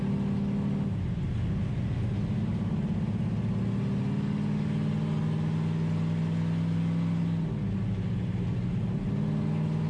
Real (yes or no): yes